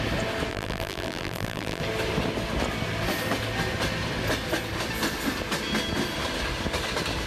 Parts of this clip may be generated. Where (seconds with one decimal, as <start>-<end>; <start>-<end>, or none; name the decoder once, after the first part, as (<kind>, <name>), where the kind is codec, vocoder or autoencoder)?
0.5-1.8 (vocoder, BigVGAN v2)